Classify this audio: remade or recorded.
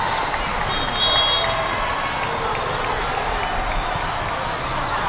recorded